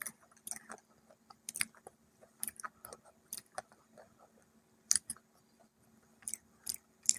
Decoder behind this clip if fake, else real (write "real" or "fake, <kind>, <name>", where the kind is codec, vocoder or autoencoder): fake, vocoder, BigVGAN v2